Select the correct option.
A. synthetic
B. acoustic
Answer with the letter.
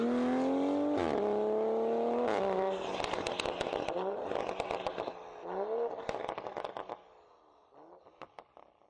B